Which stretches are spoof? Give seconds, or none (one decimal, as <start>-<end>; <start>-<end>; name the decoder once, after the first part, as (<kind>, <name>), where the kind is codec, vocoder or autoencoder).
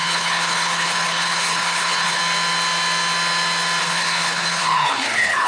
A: 0.0-2.2 (codec, HILCodec); 3.8-5.5